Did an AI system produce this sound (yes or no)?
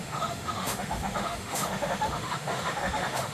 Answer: yes